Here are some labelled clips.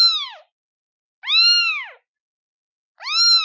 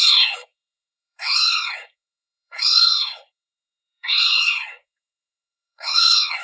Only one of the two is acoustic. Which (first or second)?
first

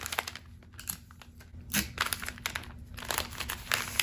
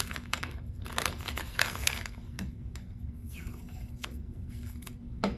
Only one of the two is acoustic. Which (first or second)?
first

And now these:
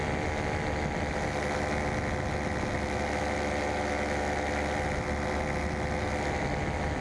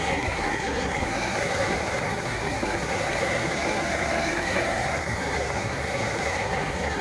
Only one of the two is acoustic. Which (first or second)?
first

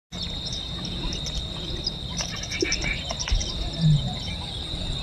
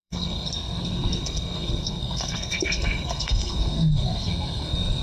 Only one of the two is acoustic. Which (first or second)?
first